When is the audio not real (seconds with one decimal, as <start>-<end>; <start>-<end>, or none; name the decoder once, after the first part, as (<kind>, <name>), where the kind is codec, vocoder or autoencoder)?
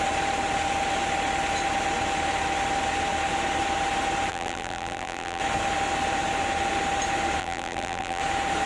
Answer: 4.3-5.4 (vocoder, BigVGAN v2); 7.4-8.2